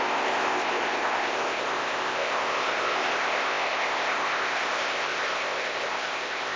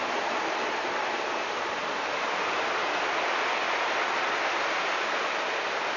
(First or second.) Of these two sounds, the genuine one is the second